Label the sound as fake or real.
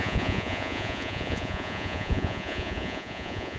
fake